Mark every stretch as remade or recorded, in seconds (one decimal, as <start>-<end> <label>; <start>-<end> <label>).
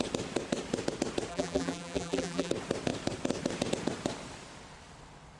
0.0-1.3 recorded; 1.3-2.5 remade; 2.5-5.4 recorded